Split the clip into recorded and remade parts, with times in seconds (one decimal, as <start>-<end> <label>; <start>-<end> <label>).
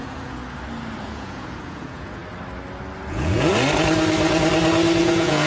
0.0-0.4 remade; 0.4-1.0 recorded; 1.0-2.2 remade; 2.2-3.1 recorded; 3.1-3.5 remade; 3.5-5.0 recorded; 5.0-5.5 remade